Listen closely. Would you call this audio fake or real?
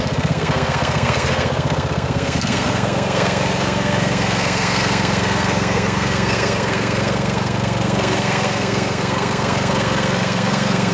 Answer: fake